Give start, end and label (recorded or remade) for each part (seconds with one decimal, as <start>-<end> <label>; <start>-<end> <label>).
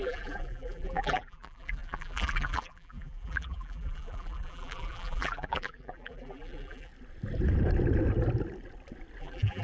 0.0-6.9 remade; 6.9-9.2 recorded; 9.2-9.6 remade